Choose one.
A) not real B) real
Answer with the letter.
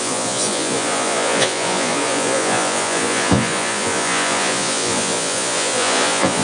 A